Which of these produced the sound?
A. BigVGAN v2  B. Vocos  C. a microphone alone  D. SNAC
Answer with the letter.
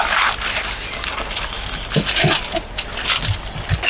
C